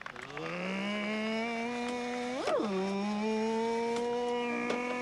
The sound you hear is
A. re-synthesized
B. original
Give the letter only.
B